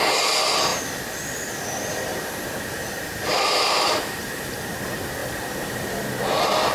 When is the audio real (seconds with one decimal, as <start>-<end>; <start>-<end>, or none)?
0.0-0.7; 4.7-6.7